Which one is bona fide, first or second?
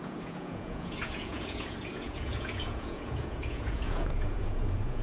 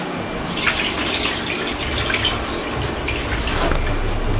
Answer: second